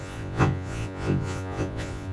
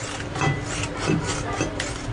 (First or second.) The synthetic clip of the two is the first